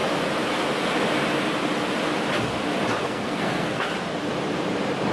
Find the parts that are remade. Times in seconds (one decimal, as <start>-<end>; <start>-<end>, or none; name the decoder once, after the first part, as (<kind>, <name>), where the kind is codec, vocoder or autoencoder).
3.0-3.9 (codec, SNAC)